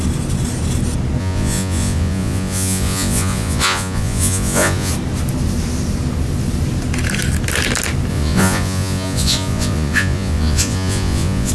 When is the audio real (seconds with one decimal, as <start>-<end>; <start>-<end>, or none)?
0.0-1.2; 4.9-8.1